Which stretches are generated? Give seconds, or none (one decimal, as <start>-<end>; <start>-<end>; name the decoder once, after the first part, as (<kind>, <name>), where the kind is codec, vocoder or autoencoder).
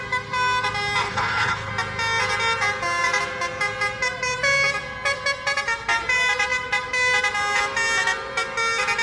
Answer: 1.0-1.7 (codec, HILCodec)